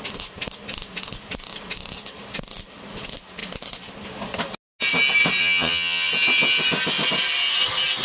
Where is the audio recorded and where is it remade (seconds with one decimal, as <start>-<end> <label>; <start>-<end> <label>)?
0.0-5.4 recorded; 5.4-6.1 remade; 6.1-8.0 recorded